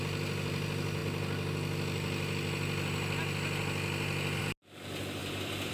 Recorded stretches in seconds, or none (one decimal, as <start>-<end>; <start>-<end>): 0.0-5.7